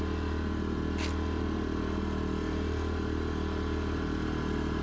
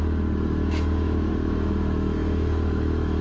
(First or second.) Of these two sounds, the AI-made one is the second